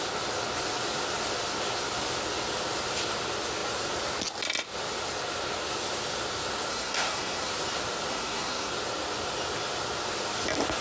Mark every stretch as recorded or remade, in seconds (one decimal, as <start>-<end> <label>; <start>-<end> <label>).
0.0-6.7 recorded; 6.7-7.5 remade; 7.5-8.1 recorded; 8.1-8.7 remade; 8.7-10.8 recorded